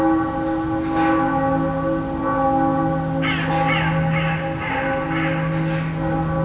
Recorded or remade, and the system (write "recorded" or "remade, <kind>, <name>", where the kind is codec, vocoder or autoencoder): recorded